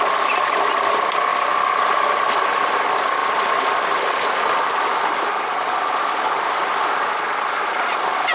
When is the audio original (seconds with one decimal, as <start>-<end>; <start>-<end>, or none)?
0.0-8.3